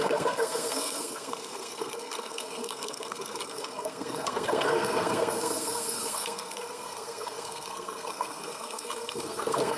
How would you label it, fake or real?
fake